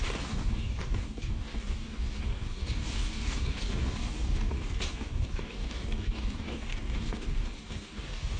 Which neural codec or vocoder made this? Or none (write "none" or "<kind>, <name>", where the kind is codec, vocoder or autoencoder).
codec, DAC